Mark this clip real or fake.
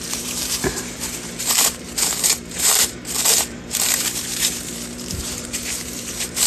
fake